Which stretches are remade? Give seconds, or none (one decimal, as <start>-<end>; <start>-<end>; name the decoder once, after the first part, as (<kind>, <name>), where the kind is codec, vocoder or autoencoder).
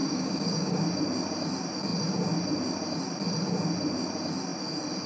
0.0-0.8 (codec, DAC)